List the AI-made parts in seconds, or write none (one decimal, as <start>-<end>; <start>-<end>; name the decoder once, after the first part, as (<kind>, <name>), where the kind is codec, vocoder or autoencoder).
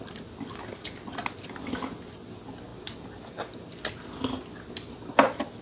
2.7-3.3 (vocoder, BigVGAN v2)